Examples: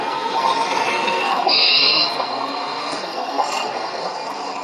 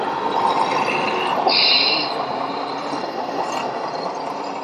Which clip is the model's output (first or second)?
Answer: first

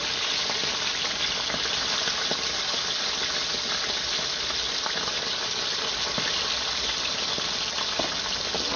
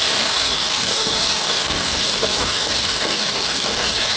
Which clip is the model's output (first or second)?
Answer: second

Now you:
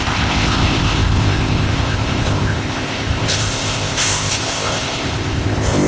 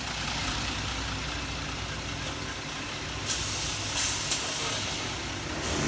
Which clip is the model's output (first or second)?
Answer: first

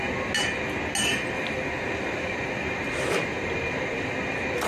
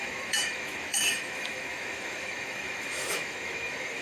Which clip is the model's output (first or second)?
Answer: second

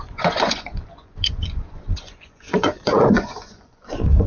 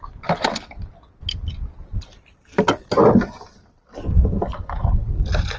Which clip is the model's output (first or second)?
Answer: first